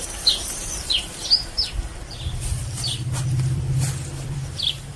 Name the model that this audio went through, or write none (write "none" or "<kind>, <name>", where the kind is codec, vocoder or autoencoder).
vocoder, BigVGAN v2